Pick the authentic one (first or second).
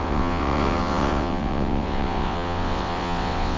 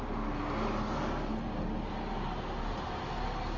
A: second